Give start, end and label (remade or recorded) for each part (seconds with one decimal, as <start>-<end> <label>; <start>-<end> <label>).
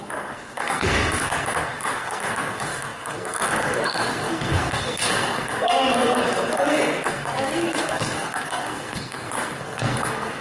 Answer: 0.0-10.4 remade